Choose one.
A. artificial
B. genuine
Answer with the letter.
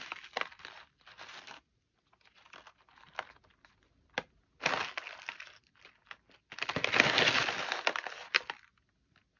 B